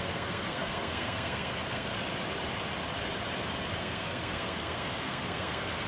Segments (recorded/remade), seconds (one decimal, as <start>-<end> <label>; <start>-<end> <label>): 0.0-1.9 remade; 1.9-3.8 recorded; 3.8-5.9 remade